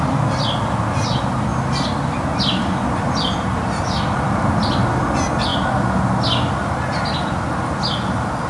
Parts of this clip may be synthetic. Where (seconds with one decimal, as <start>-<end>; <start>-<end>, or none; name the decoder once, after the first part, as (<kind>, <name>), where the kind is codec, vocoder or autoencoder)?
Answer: none